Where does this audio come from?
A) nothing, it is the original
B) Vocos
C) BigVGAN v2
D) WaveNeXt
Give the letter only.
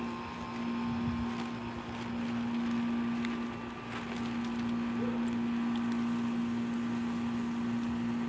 A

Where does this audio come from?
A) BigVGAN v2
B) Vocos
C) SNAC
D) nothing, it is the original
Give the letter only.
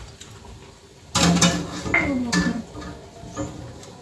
D